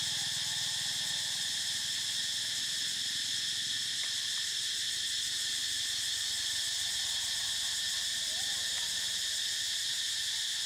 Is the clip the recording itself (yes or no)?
yes